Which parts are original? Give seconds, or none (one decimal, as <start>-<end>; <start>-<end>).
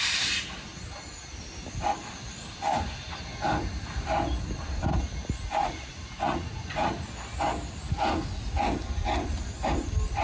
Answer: 0.0-5.6; 6.9-10.2